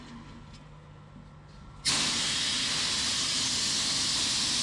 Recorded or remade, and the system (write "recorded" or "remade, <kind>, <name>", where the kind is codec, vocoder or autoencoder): recorded